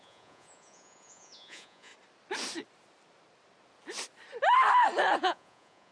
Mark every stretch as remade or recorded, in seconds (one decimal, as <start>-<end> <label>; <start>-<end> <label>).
0.0-1.9 remade; 1.9-5.2 recorded; 5.2-5.9 remade